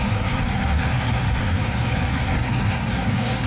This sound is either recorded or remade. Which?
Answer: remade